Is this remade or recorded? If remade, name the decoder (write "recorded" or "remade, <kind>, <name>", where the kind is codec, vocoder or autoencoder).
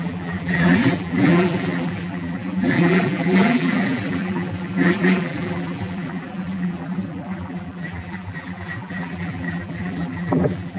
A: remade, vocoder, BigVGAN v2